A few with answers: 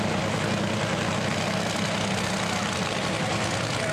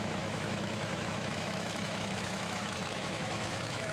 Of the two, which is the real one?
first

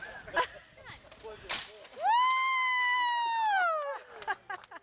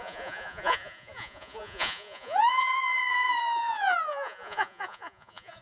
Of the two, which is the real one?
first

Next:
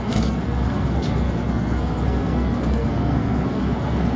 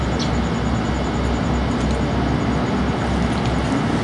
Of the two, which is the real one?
second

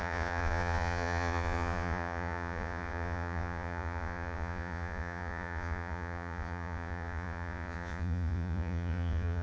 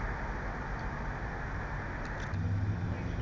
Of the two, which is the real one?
second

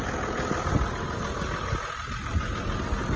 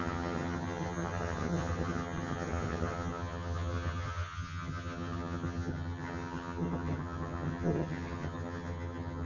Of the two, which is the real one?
first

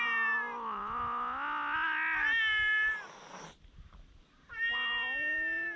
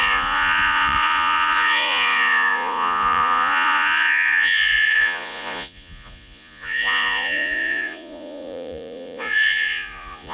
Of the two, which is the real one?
first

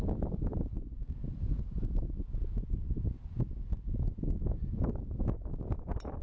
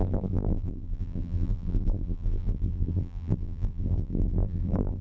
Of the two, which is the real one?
first